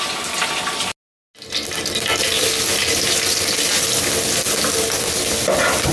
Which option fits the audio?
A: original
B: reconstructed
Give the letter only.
A